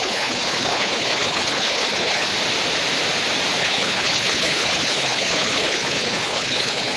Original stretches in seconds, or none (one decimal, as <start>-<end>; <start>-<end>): 2.3-3.6